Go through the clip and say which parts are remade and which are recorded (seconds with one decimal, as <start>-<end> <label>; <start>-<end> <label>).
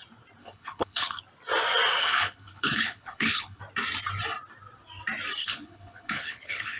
0.0-0.4 recorded; 0.4-1.2 remade; 1.2-2.0 recorded; 2.0-3.6 remade; 3.6-5.4 recorded; 5.4-6.8 remade